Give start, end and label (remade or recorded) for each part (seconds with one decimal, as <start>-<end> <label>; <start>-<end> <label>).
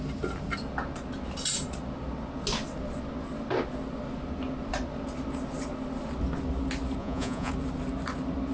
0.0-7.0 recorded; 7.0-7.5 remade; 7.5-8.5 recorded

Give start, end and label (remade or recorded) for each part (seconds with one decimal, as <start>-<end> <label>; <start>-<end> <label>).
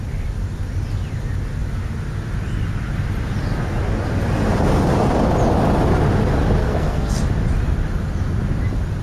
0.0-6.6 recorded; 6.6-7.2 remade; 7.2-9.0 recorded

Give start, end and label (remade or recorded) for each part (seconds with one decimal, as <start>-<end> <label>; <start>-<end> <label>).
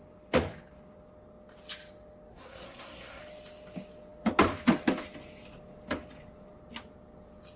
0.0-2.3 recorded; 2.3-3.2 remade; 3.2-7.6 recorded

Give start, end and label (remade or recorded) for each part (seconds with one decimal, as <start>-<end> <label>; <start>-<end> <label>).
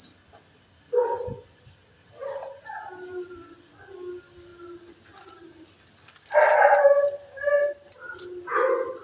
0.0-9.0 recorded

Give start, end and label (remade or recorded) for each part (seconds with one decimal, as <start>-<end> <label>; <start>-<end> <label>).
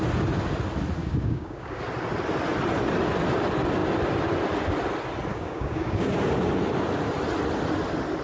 0.0-1.0 recorded; 1.0-1.8 remade; 1.8-5.3 recorded; 5.3-6.1 remade; 6.1-8.2 recorded